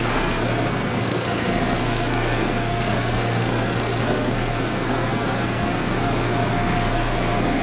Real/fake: fake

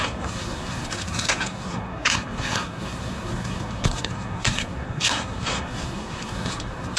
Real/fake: fake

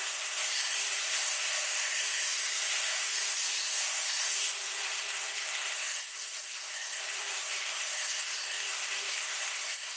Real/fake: fake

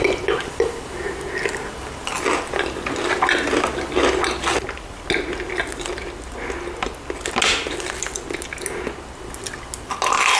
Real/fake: real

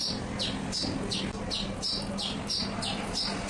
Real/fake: real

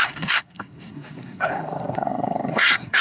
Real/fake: fake